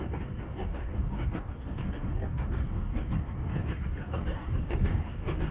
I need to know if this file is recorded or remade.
remade